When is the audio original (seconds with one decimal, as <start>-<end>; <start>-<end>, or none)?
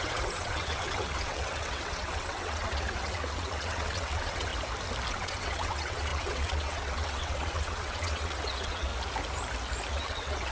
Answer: 4.5-5.1; 8.9-9.9